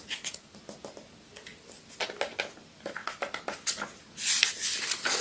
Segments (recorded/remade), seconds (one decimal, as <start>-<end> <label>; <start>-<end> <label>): 0.0-5.2 recorded